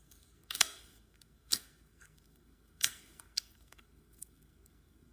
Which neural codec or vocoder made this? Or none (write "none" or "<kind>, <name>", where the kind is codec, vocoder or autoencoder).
codec, SNAC